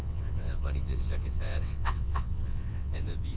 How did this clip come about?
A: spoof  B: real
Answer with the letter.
A